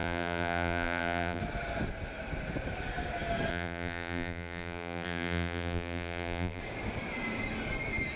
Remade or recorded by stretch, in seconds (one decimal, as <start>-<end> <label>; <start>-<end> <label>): 0.0-1.4 remade; 1.4-3.5 recorded; 3.5-6.6 remade; 6.6-8.2 recorded